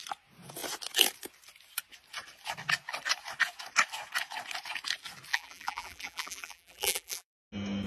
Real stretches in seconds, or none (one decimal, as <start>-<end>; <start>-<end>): 0.0-5.3; 7.4-7.9